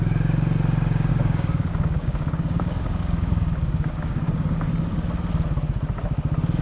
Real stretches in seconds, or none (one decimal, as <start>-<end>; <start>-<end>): 0.0-1.1; 4.8-6.6